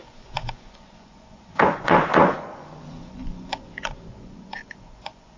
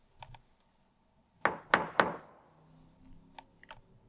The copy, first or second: first